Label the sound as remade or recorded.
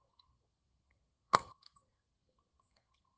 remade